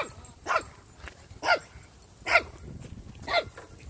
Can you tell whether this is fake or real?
real